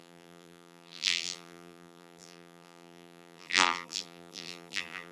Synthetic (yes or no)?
yes